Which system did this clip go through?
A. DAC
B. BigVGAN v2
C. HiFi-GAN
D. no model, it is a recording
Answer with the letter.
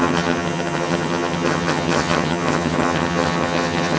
C